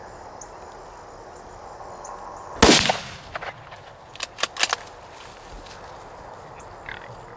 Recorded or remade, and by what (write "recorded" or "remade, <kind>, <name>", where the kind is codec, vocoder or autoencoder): recorded